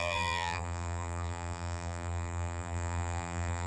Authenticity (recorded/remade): remade